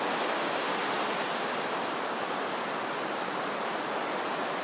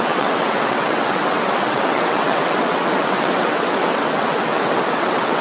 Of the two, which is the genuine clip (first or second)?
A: first